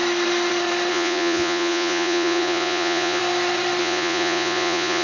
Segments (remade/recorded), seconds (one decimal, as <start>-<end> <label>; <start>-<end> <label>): 0.0-0.9 recorded; 0.9-3.2 remade; 3.2-3.8 recorded; 3.8-5.0 remade